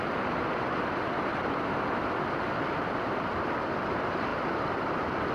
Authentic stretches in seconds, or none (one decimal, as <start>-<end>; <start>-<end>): 0.0-5.3